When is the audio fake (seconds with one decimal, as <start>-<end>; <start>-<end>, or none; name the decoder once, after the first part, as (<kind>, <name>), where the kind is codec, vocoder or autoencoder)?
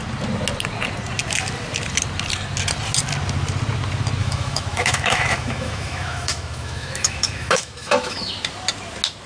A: 4.2-8.3 (autoencoder, DAC-VAE)